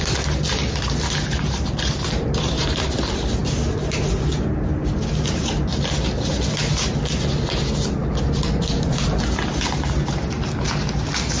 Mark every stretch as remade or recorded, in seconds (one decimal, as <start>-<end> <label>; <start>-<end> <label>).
0.0-11.4 recorded